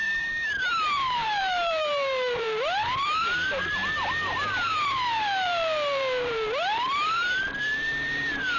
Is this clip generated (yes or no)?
yes